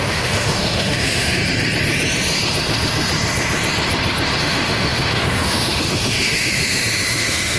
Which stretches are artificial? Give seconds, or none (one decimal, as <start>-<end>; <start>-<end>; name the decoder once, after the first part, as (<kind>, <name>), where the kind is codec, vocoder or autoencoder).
0.0-1.4 (autoencoder, DAC-VAE); 4.4-7.6